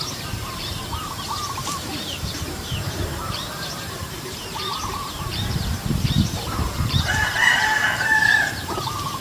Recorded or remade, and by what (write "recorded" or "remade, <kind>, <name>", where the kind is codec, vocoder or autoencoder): remade, vocoder, BigVGAN v2